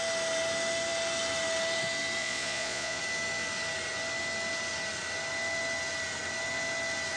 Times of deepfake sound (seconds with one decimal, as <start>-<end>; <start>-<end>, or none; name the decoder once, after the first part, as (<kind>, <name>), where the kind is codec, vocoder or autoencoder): 2.2-3.0 (vocoder, Vocos)